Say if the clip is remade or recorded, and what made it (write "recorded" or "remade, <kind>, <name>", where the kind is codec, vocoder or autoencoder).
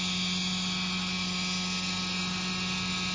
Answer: recorded